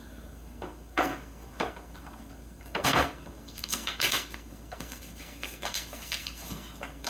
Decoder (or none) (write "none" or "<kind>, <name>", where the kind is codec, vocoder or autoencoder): codec, SNAC